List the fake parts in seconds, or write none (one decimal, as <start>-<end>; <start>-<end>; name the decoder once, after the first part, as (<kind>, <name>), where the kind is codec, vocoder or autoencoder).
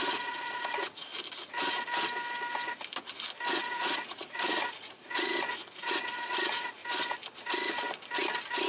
0.0-1.1 (vocoder, Vocos); 3.5-6.8